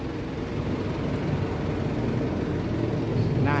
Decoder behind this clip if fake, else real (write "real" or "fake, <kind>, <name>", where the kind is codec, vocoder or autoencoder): real